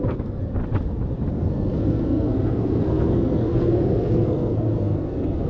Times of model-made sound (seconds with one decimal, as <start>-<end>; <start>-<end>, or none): 0.0-0.4; 1.3-5.5